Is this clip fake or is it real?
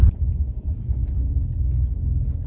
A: real